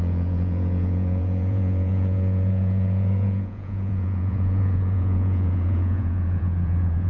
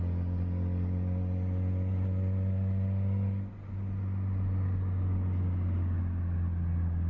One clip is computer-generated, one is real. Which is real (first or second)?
second